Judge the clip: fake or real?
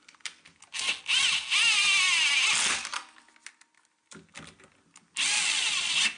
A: real